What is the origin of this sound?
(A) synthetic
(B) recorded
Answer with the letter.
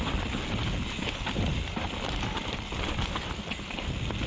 B